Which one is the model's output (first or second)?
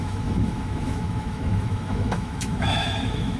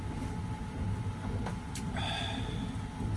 first